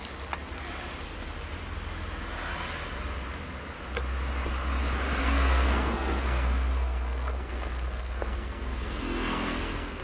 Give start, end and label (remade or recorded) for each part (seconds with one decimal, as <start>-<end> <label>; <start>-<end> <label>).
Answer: 0.0-5.2 recorded; 5.2-10.0 remade